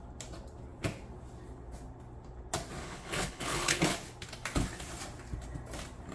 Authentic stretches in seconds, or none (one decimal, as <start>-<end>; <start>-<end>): 0.0-2.8; 3.8-6.1